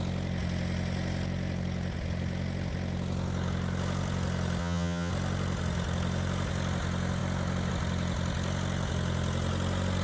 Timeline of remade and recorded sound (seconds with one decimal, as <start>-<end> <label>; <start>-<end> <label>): 0.0-4.6 recorded; 4.6-5.1 remade; 5.1-10.0 recorded